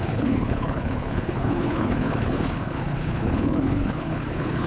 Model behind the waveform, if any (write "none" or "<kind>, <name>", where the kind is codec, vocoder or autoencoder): codec, HILCodec